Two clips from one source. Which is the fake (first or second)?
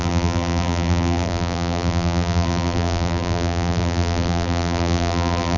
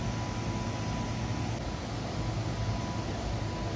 first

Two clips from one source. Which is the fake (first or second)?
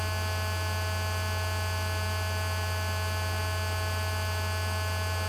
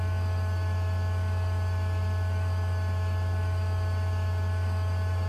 second